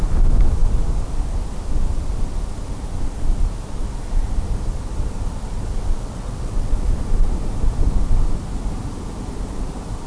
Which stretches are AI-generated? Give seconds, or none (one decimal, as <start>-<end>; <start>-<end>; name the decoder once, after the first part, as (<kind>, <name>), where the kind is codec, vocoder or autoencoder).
5.7-6.9 (vocoder, WaveNeXt)